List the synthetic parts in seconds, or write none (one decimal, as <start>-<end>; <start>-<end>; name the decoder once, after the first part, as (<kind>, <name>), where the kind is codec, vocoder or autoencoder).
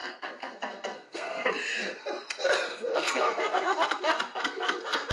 0.0-1.5 (codec, SNAC); 2.7-5.1